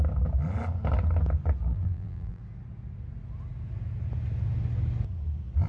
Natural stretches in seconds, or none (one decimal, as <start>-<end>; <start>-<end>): 0.0-1.7; 2.4-5.7